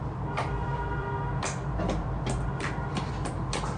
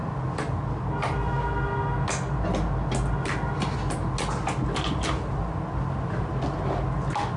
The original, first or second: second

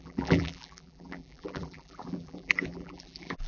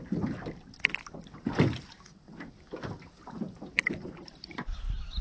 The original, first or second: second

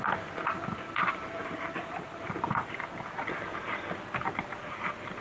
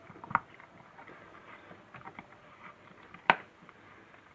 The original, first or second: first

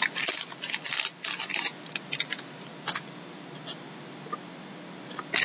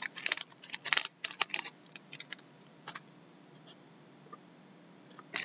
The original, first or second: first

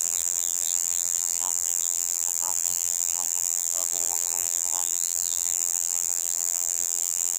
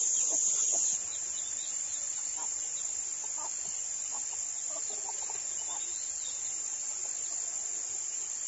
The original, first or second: second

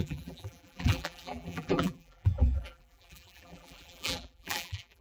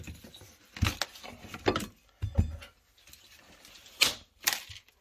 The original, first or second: second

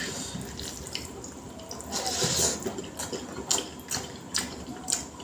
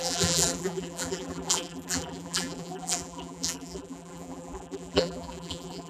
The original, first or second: first